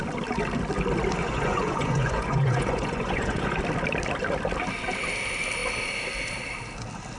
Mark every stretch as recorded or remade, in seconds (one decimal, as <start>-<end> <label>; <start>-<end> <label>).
0.0-1.2 recorded; 1.2-3.6 remade; 3.6-7.2 recorded